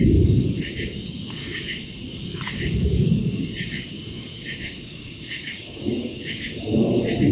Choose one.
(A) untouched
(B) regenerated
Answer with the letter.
B